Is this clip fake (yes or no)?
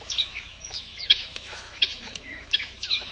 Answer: yes